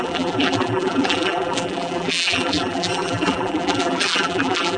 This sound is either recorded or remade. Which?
remade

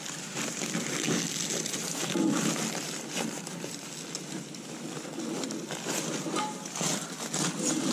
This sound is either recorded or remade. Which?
recorded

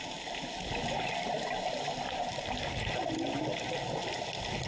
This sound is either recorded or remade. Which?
recorded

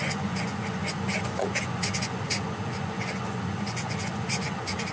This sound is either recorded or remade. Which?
remade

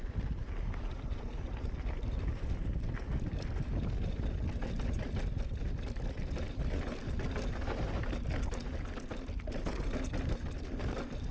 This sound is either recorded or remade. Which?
recorded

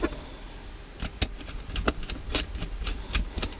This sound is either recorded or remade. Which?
recorded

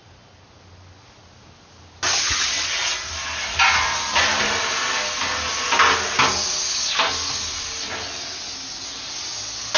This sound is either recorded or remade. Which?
recorded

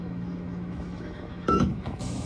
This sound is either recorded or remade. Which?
remade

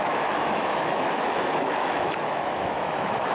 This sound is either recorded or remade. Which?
remade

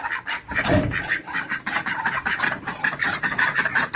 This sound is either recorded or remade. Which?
remade